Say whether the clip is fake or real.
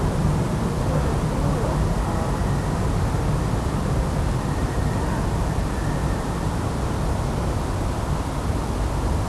real